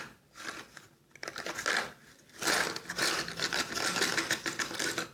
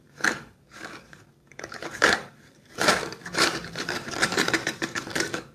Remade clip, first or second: second